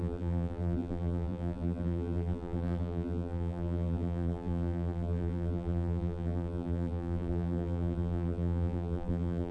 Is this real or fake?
fake